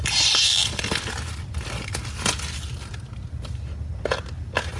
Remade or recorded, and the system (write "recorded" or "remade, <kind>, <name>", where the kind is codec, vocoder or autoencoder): recorded